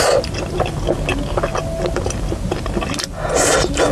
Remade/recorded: recorded